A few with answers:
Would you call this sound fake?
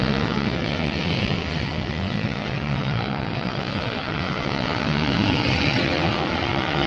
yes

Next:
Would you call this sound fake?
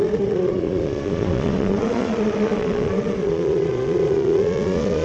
yes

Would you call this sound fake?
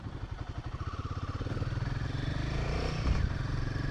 yes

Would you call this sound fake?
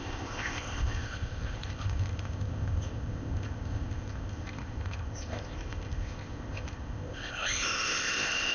yes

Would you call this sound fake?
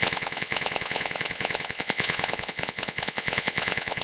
yes